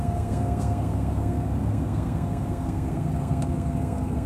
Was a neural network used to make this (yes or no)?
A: yes